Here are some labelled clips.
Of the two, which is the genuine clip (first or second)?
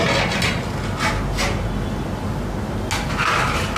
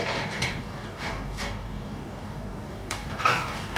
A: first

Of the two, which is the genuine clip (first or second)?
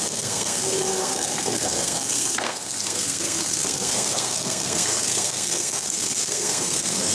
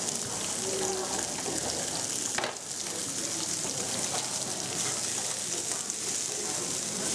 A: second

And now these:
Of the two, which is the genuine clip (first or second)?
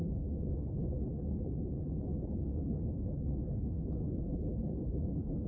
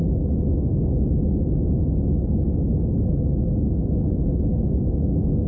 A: second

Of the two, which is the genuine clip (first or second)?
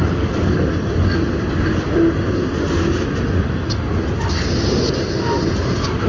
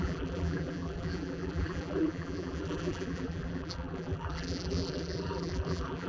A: first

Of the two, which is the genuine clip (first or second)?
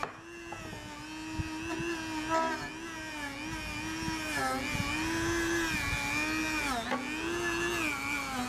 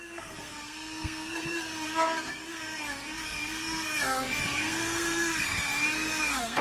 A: first